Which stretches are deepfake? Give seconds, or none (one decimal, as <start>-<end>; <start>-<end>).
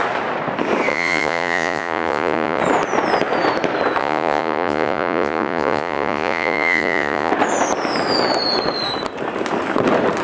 0.9-2.6; 4.0-7.3